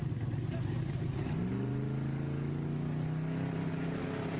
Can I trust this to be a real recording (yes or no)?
yes